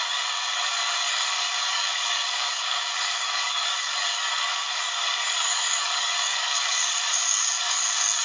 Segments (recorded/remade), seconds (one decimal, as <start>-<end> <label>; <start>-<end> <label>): 0.0-8.2 remade